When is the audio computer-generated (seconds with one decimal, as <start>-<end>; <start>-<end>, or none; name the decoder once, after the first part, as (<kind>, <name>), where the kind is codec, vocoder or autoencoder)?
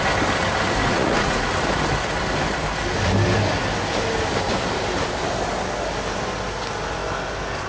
0.8-1.5 (vocoder, Vocos)